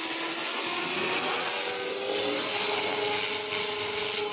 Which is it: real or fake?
real